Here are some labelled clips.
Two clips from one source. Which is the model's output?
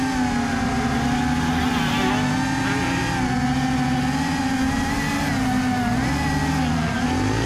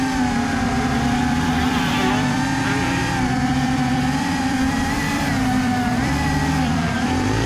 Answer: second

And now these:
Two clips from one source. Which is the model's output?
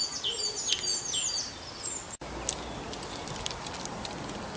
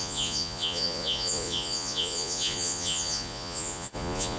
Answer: second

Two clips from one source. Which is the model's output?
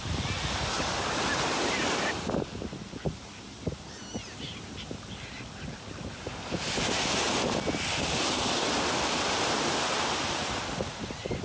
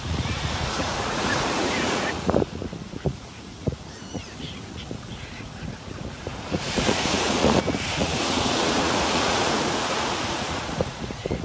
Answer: second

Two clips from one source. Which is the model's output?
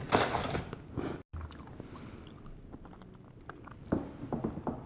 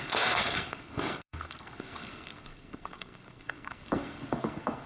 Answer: second